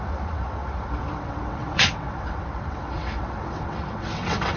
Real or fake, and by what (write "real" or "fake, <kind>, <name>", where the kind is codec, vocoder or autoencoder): fake, vocoder, WaveNeXt